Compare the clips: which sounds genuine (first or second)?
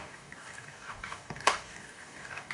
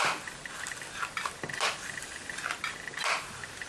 second